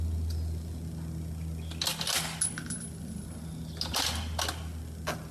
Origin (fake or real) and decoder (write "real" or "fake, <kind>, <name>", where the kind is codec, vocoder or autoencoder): real